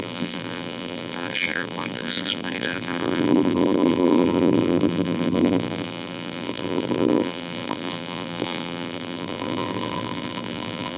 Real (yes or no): no